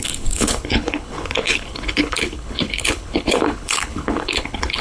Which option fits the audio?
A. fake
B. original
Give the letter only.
A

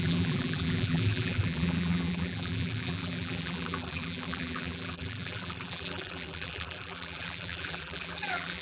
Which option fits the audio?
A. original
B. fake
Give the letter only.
B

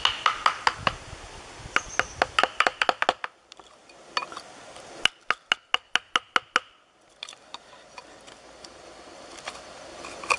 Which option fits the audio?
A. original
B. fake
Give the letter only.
A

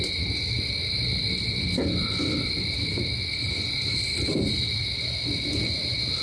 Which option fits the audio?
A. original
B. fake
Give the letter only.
A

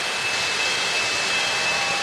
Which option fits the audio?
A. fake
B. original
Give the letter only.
B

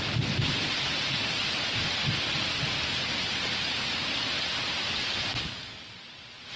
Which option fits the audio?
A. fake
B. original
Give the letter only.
B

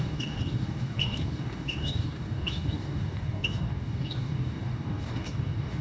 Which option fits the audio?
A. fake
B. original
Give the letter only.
A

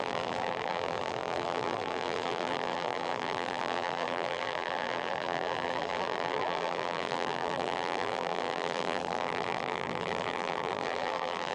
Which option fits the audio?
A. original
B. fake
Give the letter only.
B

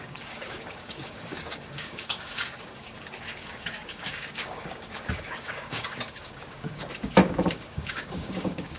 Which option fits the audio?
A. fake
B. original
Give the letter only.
A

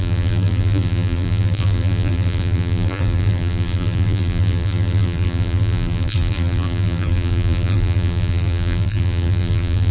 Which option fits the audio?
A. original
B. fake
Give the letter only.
B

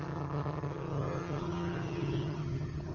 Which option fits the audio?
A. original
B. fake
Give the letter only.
B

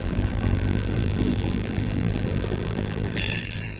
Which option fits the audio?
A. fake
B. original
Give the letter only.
A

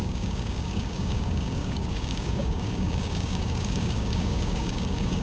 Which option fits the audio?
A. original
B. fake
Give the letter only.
B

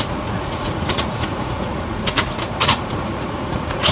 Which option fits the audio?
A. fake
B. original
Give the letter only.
A